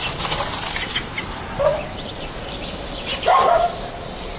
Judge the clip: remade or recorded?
remade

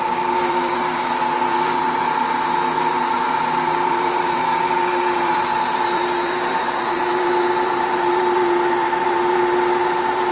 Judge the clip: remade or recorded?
remade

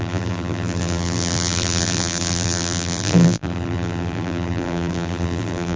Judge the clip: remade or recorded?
remade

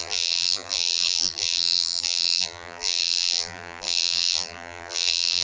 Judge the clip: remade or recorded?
remade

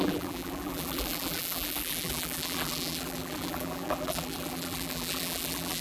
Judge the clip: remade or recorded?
remade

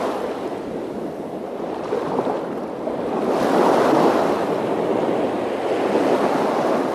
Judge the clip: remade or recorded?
recorded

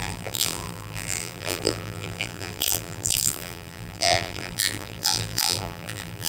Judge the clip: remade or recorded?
remade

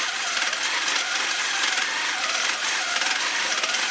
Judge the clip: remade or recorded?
remade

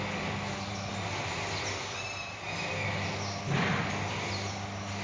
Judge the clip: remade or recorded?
recorded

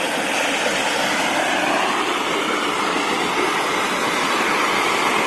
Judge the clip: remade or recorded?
recorded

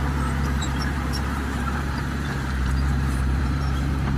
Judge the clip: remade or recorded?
remade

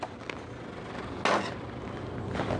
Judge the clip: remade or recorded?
recorded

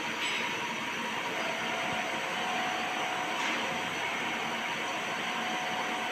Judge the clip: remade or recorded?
recorded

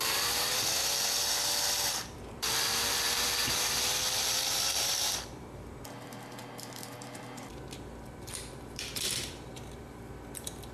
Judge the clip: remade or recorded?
remade